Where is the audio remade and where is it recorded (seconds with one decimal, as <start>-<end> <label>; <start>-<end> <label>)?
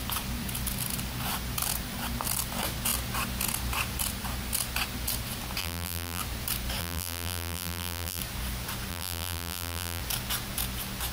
0.0-5.6 recorded; 5.6-6.2 remade; 6.2-6.8 recorded; 6.8-8.2 remade; 8.2-8.9 recorded; 8.9-10.0 remade; 10.0-11.1 recorded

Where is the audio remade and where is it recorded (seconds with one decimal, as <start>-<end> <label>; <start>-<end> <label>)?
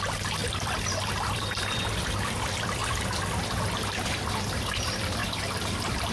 0.0-2.8 remade; 2.8-4.7 recorded; 4.7-6.1 remade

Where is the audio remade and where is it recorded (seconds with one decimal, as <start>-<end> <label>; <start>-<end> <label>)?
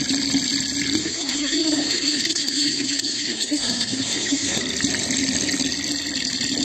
0.0-1.0 recorded; 1.0-4.6 remade; 4.6-6.6 recorded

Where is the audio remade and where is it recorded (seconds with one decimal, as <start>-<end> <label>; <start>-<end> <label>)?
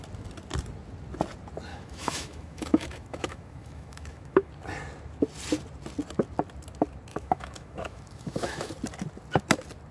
0.0-1.7 recorded; 1.7-4.5 remade; 4.5-7.1 recorded; 7.1-8.7 remade; 8.7-9.9 recorded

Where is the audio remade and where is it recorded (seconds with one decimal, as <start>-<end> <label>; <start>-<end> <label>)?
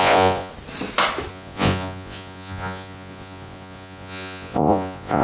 0.0-0.5 remade; 0.5-1.3 recorded; 1.3-5.2 remade